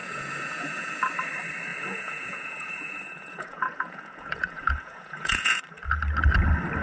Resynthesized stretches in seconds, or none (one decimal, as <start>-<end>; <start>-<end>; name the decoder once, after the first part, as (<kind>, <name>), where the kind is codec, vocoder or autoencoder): 0.0-1.0 (vocoder, Vocos); 1.7-5.6